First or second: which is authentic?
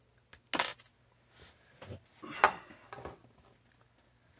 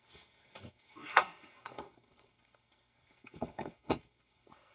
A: first